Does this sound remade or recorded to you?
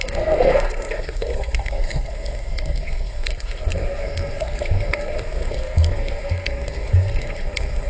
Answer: remade